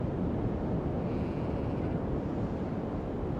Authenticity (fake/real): real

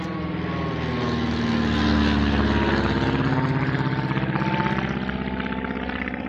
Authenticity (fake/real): real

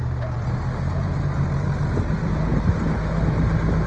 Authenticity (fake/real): fake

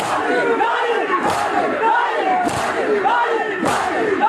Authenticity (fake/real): real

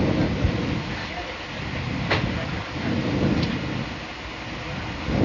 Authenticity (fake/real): real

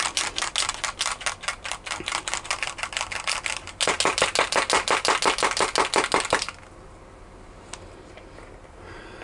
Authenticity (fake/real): real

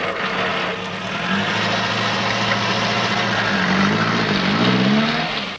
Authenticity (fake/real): real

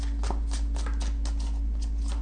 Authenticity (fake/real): real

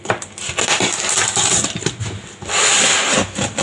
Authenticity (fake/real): fake